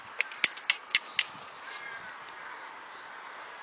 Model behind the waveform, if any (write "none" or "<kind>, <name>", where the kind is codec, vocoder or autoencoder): none